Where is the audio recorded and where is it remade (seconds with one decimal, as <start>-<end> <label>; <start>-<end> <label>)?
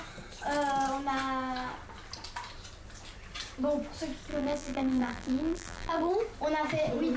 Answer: 0.0-4.3 recorded; 4.3-6.1 remade; 6.1-7.2 recorded